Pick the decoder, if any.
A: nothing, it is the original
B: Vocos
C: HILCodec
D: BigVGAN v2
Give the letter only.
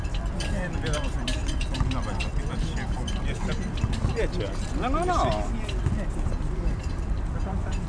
A